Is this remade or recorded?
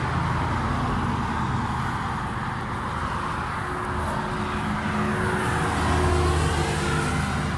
recorded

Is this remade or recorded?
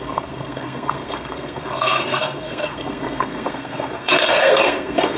remade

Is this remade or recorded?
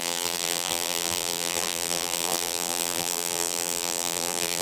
remade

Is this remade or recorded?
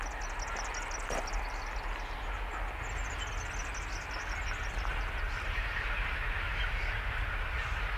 recorded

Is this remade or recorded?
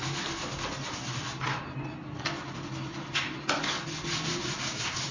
recorded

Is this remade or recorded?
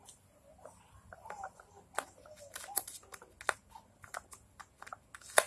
recorded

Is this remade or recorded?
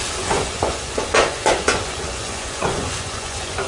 remade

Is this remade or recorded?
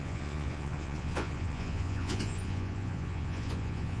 remade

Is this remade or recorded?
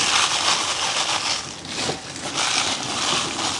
recorded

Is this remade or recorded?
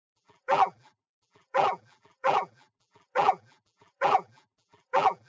remade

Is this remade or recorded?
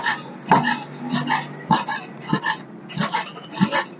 recorded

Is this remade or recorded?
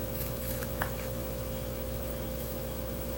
remade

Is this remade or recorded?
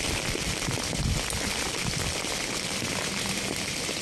recorded